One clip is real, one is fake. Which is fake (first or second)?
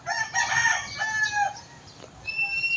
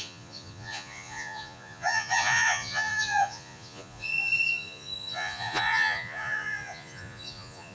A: second